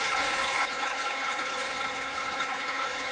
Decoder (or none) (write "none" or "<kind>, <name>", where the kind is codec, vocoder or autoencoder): codec, HILCodec